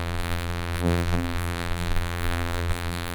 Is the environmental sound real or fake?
fake